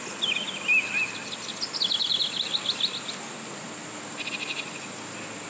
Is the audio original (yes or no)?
yes